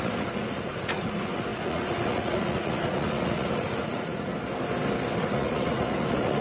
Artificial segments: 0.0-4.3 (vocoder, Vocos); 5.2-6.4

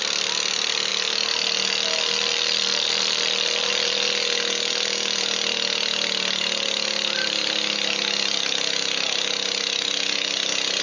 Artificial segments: none